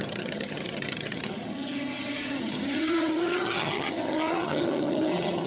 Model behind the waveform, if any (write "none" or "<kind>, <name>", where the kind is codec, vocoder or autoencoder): vocoder, HiFi-GAN